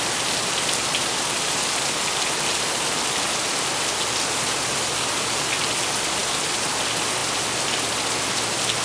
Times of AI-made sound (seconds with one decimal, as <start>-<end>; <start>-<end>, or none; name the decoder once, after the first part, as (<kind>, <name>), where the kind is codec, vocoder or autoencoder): none